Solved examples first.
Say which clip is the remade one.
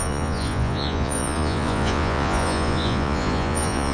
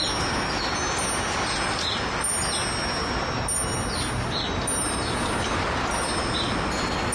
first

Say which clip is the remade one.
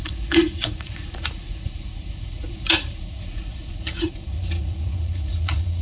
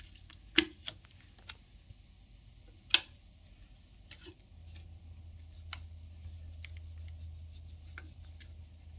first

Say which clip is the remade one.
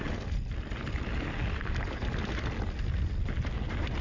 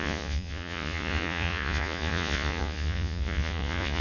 second